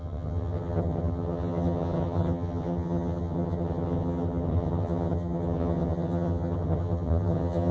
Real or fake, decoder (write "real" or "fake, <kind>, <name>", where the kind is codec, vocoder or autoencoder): fake, vocoder, HiFi-GAN